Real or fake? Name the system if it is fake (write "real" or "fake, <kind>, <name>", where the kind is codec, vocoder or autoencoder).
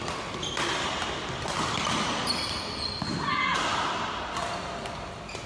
real